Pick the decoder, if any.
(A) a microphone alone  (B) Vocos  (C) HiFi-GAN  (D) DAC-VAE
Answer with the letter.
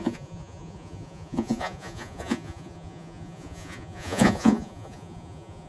B